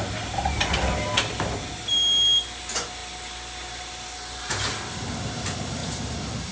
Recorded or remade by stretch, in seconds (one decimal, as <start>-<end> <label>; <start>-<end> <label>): 0.0-6.5 recorded

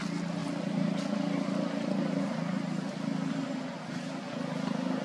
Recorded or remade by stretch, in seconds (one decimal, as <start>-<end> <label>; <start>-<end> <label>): 0.0-0.4 recorded; 0.4-3.3 remade; 3.3-5.0 recorded

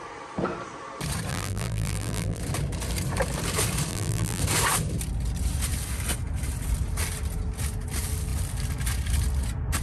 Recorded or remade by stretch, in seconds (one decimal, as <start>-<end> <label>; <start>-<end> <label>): 0.0-1.3 recorded; 1.3-2.4 remade; 2.4-3.9 recorded; 3.9-4.4 remade; 4.4-9.8 recorded

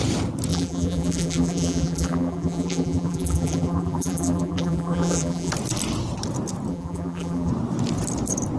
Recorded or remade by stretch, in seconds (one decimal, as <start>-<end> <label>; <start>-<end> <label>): 0.0-0.5 recorded; 0.5-5.5 remade; 5.5-6.7 recorded; 6.7-7.5 remade; 7.5-8.6 recorded

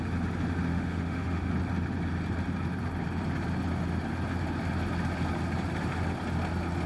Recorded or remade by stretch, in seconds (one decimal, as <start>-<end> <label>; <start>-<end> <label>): 0.0-0.7 recorded; 0.7-1.5 remade; 1.5-6.9 recorded